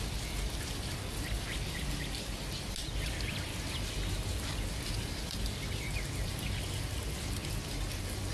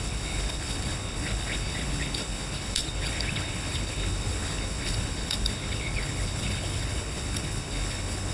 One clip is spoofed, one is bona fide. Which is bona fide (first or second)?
first